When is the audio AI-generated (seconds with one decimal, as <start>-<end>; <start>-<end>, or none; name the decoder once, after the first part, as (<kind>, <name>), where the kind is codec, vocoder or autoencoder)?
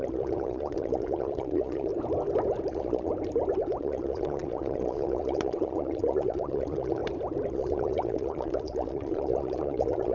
0.0-1.9 (vocoder, Vocos); 2.7-3.1; 3.8-7.0; 7.5-10.1